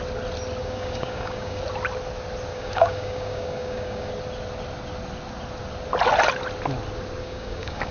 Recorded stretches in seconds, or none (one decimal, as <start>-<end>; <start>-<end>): 0.0-0.6; 1.6-2.5; 4.1-7.2